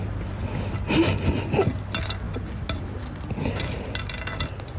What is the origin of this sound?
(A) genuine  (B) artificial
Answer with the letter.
A